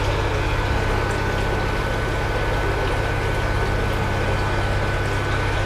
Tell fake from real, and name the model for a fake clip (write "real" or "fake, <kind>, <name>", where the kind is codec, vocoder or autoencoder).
real